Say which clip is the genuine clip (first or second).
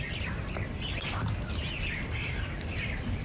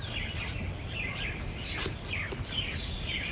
first